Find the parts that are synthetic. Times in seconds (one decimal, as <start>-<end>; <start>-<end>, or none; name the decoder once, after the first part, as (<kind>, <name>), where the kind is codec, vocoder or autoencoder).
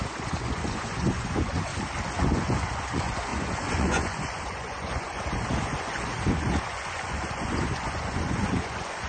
0.0-1.7 (vocoder, Vocos); 2.2-9.1